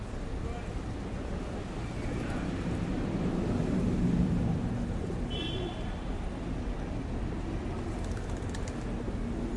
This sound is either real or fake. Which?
real